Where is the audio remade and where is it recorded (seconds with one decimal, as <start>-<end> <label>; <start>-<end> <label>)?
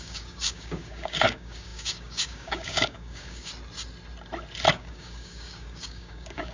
0.0-3.5 remade; 3.5-4.7 recorded; 4.7-6.5 remade